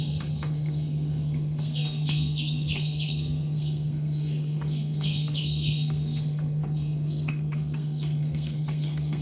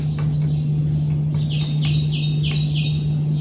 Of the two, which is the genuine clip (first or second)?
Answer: second